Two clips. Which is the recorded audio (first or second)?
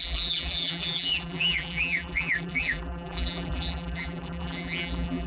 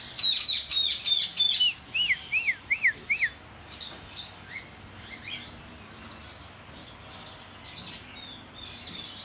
second